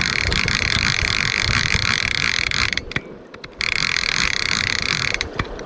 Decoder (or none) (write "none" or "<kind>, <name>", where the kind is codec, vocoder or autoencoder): vocoder, BigVGAN v2